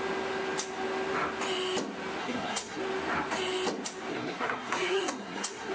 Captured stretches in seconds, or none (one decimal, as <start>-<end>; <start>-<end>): 0.0-2.2; 2.8-4.1